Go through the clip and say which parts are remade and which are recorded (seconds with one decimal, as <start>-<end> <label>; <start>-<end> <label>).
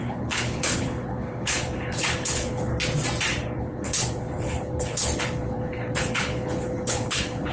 0.0-2.7 remade; 2.7-3.6 recorded; 3.6-7.5 remade